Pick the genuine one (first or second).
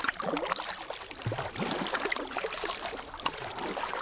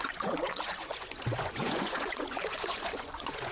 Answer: first